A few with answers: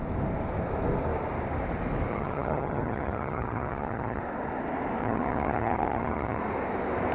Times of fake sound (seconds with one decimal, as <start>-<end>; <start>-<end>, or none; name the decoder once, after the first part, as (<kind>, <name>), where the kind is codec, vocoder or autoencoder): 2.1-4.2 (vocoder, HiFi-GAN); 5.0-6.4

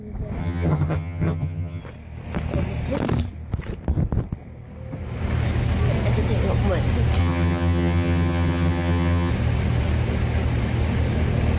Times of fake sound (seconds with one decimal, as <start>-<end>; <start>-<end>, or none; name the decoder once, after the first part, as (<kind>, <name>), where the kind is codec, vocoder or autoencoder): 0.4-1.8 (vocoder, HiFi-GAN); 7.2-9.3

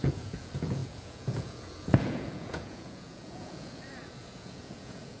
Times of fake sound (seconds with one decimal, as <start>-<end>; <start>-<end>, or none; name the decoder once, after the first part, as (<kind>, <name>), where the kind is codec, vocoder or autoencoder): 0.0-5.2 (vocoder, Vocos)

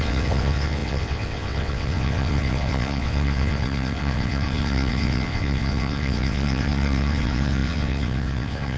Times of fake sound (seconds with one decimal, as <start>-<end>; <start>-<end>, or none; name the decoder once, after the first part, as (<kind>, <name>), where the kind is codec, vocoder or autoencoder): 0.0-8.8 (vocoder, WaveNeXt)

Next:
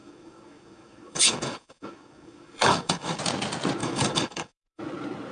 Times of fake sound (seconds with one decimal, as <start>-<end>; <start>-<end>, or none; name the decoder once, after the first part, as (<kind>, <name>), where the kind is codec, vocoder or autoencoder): 0.0-3.2 (codec, DAC); 3.8-4.8